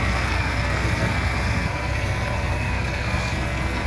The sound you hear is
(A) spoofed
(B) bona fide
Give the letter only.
A